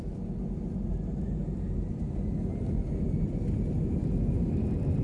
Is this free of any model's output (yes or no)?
yes